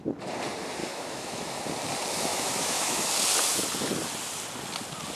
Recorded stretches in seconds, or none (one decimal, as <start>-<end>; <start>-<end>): 0.0-0.8; 1.6-2.3; 3.1-5.2